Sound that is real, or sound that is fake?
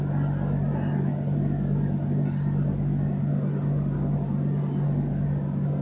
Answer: real